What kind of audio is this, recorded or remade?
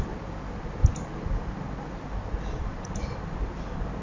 recorded